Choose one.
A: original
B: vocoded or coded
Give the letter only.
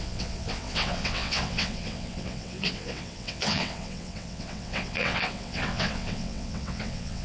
B